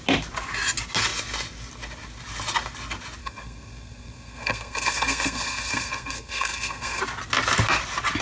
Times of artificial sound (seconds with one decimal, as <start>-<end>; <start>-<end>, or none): 3.2-7.0